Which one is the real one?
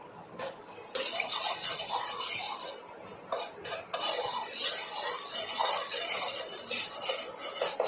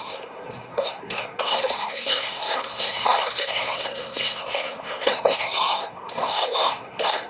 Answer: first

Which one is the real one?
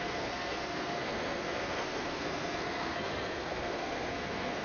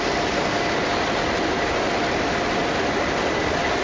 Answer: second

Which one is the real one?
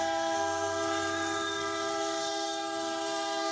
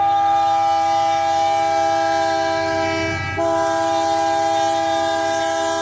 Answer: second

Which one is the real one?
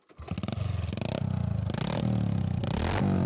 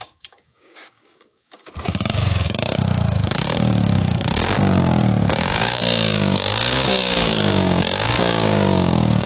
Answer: first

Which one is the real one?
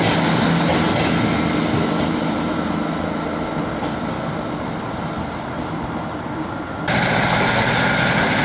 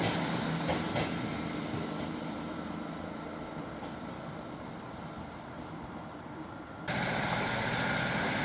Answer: first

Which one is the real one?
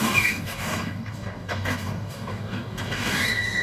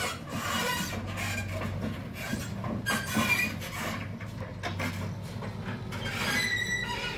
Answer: second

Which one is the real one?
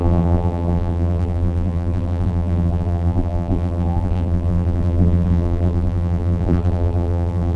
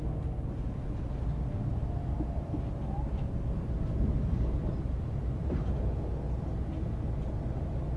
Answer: second